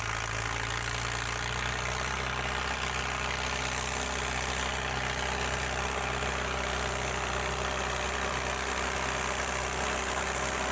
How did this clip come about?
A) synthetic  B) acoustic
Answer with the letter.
B